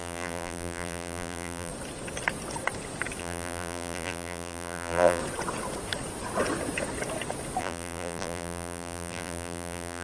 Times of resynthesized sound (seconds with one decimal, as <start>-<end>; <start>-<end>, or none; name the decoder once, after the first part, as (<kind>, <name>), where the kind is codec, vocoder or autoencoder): 0.0-1.7 (vocoder, BigVGAN v2); 3.2-5.2; 7.6-10.0